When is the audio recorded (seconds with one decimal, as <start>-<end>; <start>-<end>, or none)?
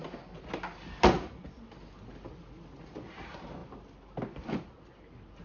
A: 0.0-5.4